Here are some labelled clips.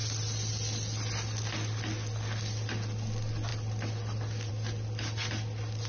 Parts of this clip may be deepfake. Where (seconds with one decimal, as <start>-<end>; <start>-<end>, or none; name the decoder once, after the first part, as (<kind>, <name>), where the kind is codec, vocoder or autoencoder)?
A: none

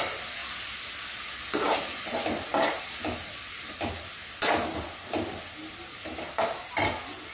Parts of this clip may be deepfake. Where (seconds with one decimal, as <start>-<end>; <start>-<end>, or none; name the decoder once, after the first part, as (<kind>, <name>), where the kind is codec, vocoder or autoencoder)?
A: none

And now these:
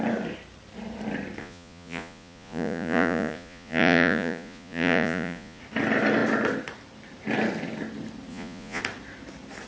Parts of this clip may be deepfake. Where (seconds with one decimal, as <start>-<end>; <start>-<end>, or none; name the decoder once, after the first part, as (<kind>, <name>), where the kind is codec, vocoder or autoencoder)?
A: 1.4-5.6 (vocoder, Vocos); 8.3-8.8